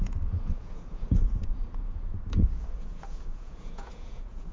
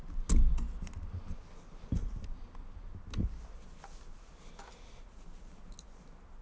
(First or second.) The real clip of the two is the second